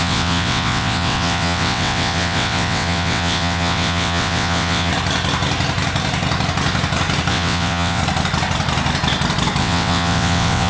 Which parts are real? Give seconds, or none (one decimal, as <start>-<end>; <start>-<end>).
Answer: 4.9-7.3; 8.0-9.6